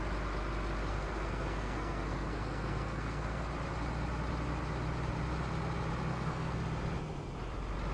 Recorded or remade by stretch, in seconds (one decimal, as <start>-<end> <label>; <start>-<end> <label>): 0.0-0.9 recorded; 0.9-3.5 remade; 3.5-6.1 recorded; 6.1-6.6 remade; 6.6-7.9 recorded